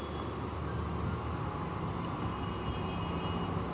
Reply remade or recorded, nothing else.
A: recorded